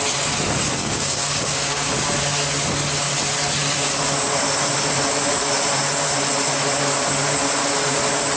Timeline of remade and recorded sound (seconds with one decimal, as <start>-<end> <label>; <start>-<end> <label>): 0.0-0.8 recorded; 0.8-1.9 remade; 1.9-8.4 recorded